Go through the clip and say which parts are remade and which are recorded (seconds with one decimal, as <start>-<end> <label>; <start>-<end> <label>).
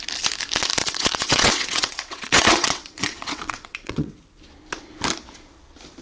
0.0-0.8 recorded; 0.8-4.4 remade; 4.4-6.0 recorded